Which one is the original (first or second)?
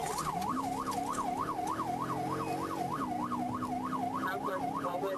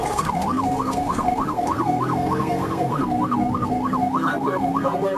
first